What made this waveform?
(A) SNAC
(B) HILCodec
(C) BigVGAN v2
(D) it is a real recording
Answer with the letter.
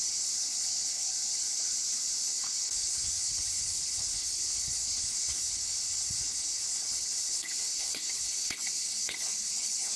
B